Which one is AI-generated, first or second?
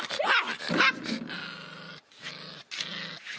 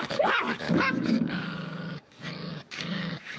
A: second